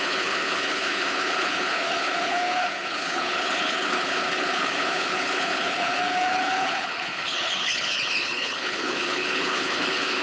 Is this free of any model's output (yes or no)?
no